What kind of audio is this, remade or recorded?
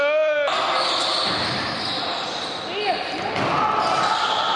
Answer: recorded